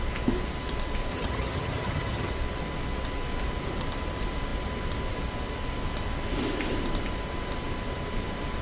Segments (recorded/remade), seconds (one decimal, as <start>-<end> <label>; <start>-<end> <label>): 0.0-1.1 recorded; 1.1-2.3 remade; 2.3-8.6 recorded